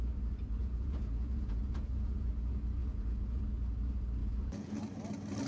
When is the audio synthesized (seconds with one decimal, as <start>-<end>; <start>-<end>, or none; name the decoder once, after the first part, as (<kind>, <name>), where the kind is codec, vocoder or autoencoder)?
0.6-2.3 (vocoder, Vocos); 2.8-3.4; 4.2-4.8